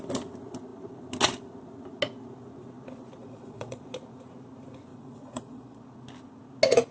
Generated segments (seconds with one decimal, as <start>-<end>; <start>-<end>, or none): 3.2-3.9; 4.9-5.8